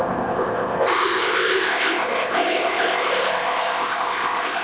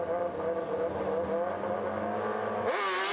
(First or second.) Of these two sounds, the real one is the second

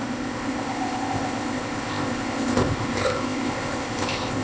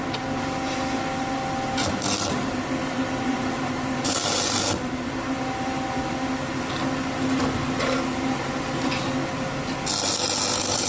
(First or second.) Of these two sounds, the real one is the second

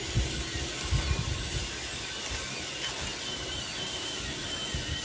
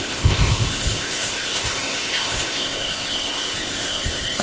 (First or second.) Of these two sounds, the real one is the first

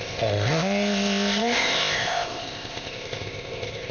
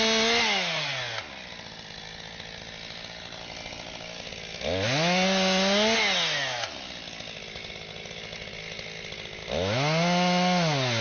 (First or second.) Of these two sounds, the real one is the second